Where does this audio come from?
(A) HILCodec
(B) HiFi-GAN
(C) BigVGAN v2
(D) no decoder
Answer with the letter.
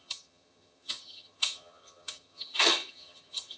B